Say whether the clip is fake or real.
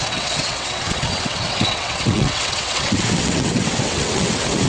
fake